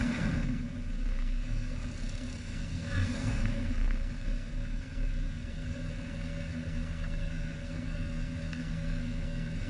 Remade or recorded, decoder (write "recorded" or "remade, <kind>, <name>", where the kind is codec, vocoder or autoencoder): remade, codec, SNAC